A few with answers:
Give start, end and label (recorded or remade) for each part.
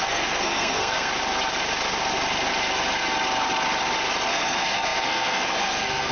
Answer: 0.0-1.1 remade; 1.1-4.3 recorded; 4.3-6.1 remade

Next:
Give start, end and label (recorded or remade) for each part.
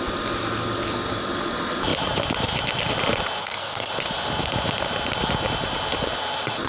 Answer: 0.0-3.4 recorded; 3.4-3.9 remade; 3.9-6.7 recorded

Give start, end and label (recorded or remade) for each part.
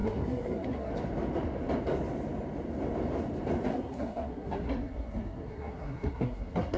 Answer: 0.0-0.9 remade; 0.9-3.7 recorded; 3.7-6.8 remade